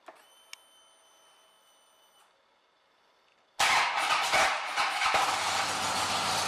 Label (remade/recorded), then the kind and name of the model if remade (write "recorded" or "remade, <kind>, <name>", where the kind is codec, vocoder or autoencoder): recorded